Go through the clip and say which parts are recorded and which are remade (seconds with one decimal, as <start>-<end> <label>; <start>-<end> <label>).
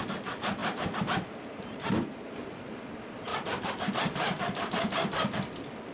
0.0-0.6 recorded; 0.6-2.6 remade; 2.6-3.3 recorded; 3.3-4.4 remade; 4.4-5.9 recorded